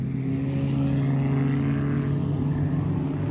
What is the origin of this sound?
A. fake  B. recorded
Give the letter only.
B